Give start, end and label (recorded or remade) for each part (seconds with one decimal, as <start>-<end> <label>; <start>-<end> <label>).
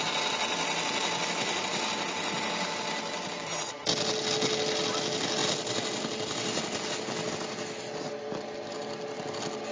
0.0-9.7 recorded